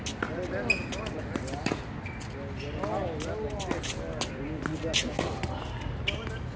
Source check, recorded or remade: recorded